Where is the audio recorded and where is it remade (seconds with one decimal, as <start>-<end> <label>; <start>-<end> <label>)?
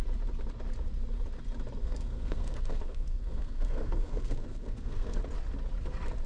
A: 0.0-1.8 recorded; 1.8-5.2 remade; 5.2-6.3 recorded